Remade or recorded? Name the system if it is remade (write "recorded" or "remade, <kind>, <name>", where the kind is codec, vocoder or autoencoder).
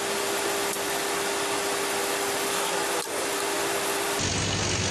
recorded